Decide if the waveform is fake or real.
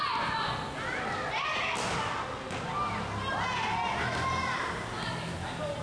real